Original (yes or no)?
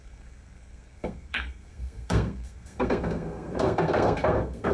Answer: no